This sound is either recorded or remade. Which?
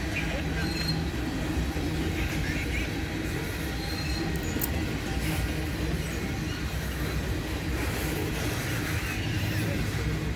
recorded